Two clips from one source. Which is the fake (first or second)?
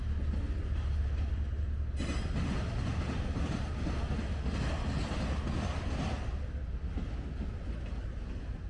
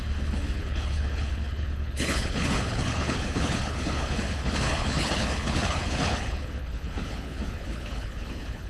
second